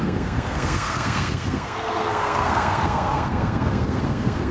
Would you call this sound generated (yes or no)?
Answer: yes